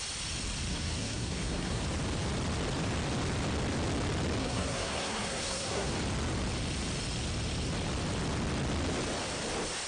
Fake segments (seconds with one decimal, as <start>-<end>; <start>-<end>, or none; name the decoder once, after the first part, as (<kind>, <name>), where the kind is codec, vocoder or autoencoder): 0.7-1.8 (codec, SNAC); 4.4-5.9